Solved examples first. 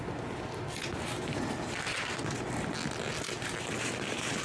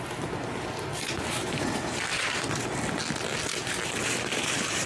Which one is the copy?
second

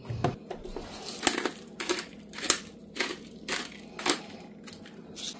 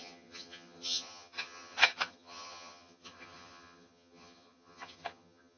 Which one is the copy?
second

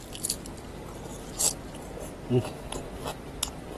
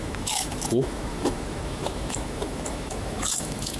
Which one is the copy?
second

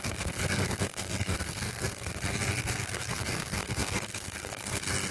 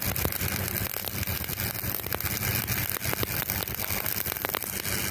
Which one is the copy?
first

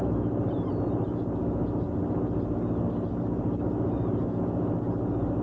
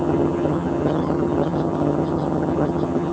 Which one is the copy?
second